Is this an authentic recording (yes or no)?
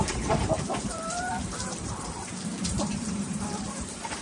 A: no